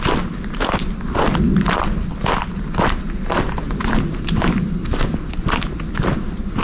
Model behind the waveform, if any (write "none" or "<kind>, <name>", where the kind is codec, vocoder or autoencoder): none